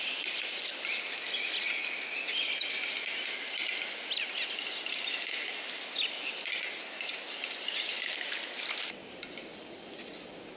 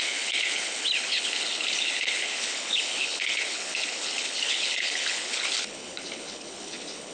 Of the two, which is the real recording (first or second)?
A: first